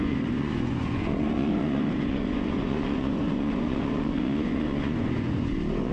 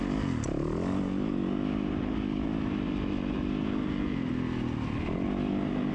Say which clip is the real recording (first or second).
second